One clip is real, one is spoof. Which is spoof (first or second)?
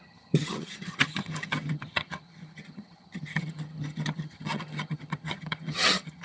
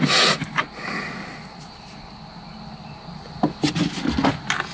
first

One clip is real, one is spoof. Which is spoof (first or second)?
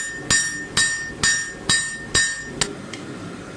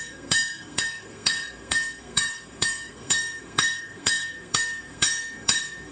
second